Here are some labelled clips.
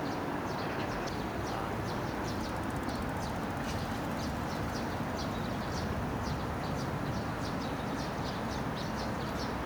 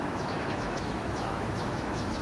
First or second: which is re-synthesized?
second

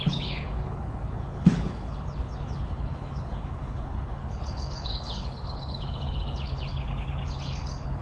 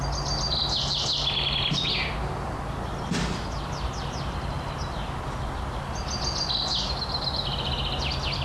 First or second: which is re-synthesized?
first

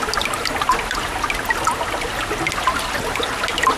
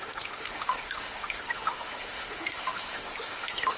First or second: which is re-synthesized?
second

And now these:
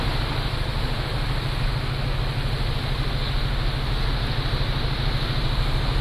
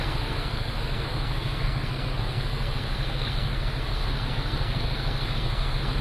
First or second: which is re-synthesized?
second